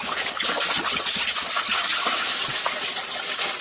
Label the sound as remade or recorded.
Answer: recorded